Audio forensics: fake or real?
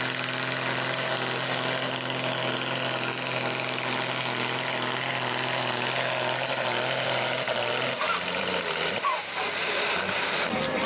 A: real